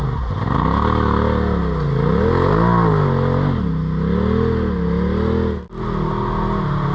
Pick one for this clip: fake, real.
real